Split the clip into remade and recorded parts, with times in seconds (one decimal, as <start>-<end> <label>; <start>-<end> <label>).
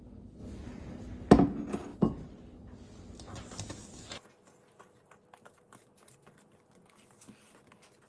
0.0-8.1 recorded